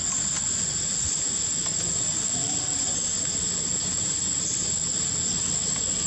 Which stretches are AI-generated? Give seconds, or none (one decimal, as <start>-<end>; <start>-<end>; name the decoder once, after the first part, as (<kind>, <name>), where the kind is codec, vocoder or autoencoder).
none